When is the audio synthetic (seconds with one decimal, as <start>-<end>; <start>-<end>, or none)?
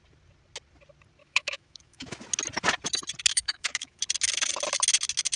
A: 1.2-2.2; 3.3-4.0